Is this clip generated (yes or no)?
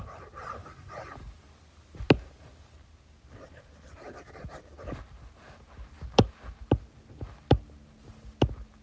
no